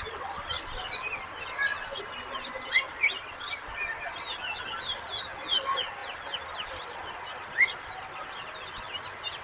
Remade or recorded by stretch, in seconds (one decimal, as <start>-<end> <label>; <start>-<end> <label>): 0.0-9.4 recorded